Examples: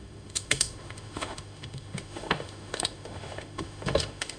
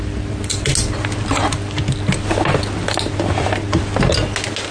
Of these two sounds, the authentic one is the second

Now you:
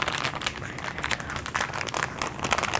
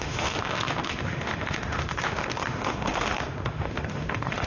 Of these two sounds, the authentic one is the first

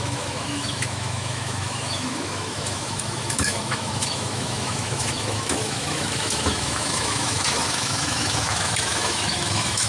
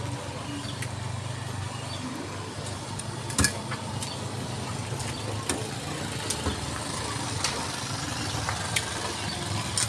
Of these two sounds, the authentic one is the second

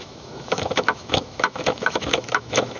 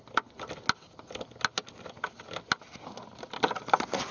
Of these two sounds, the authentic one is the second